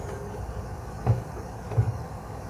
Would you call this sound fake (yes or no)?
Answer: yes